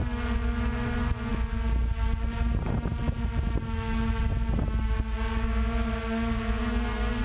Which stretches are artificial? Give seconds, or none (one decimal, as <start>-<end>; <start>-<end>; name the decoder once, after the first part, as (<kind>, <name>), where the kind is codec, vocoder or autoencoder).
none